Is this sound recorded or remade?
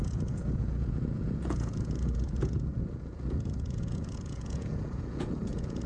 remade